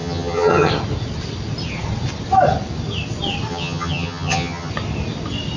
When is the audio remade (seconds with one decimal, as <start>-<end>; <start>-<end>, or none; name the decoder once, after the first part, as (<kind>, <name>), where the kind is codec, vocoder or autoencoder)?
0.0-0.7 (vocoder, HiFi-GAN); 3.5-4.7